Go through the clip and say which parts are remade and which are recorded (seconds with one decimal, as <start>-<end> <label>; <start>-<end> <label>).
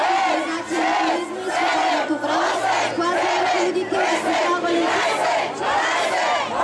0.0-6.6 recorded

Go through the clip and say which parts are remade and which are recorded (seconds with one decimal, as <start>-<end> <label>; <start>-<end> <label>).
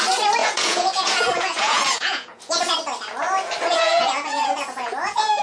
0.0-0.4 recorded; 0.4-2.7 remade; 2.7-3.7 recorded; 3.7-5.4 remade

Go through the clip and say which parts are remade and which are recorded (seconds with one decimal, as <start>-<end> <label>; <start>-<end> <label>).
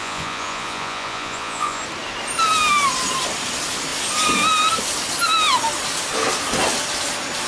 0.0-1.8 remade; 1.8-7.5 recorded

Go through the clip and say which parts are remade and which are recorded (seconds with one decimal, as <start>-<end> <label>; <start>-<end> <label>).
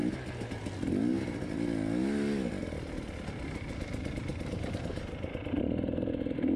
0.0-6.6 recorded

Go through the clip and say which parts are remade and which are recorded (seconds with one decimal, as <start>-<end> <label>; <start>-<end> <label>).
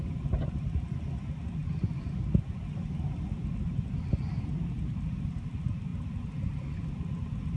0.0-7.6 recorded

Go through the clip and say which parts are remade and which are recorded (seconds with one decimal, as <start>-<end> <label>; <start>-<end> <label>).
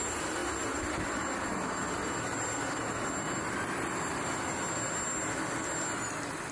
0.0-6.5 recorded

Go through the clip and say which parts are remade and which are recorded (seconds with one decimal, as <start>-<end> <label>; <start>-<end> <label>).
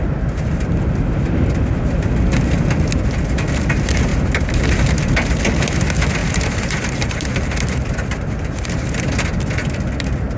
0.0-4.1 recorded; 4.1-5.4 remade; 5.4-6.2 recorded; 6.2-8.9 remade; 8.9-10.4 recorded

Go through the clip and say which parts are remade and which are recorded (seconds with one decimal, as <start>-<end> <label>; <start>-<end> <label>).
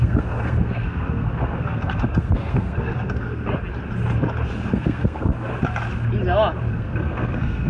0.0-3.5 remade; 3.5-4.7 recorded; 4.7-5.5 remade; 5.5-6.7 recorded; 6.7-7.7 remade